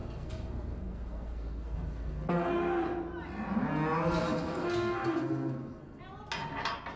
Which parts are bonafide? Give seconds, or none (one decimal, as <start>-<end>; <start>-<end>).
2.5-4.2; 6.0-7.0